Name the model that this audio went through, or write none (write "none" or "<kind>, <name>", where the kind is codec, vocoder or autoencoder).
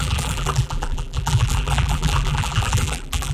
vocoder, BigVGAN v2